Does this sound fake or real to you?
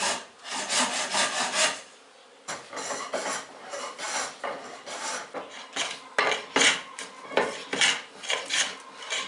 real